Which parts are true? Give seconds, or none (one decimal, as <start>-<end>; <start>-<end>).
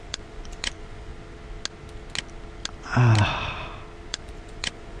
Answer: 1.1-4.1